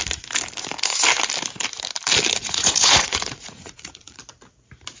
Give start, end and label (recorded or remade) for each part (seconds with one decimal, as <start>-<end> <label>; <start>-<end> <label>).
0.0-2.4 recorded; 2.4-4.2 remade; 4.2-5.0 recorded